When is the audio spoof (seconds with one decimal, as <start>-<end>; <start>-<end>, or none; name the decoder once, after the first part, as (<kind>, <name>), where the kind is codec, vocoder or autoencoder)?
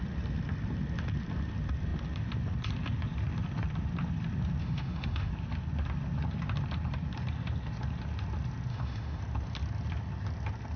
4.6-5.3 (autoencoder, DAC-VAE); 8.7-9.2